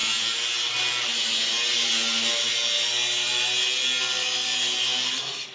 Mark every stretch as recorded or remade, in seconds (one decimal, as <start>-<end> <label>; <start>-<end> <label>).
0.0-5.5 recorded